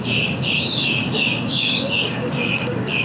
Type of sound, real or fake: fake